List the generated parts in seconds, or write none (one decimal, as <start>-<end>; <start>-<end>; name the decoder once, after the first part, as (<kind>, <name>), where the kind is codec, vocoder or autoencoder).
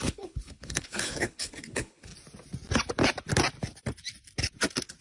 0.0-2.1 (codec, HILCodec)